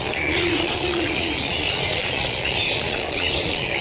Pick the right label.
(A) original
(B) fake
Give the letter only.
B